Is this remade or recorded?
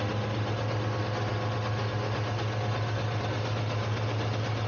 recorded